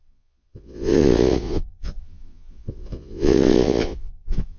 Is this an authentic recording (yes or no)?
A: no